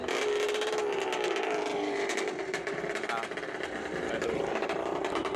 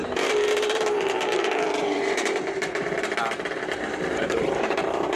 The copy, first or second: second